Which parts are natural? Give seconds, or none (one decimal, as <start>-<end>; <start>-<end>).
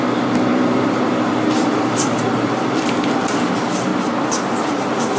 0.0-0.5; 3.4-5.2